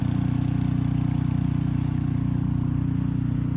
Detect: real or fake real